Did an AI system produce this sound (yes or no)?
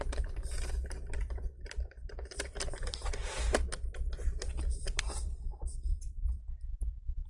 yes